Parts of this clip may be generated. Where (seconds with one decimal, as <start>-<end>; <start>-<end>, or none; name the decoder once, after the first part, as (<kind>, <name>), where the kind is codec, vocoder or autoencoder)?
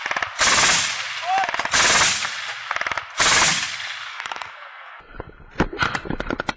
4.1-5.0 (codec, SNAC)